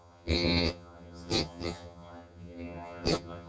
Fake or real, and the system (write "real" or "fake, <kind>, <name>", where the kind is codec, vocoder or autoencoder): fake, vocoder, HiFi-GAN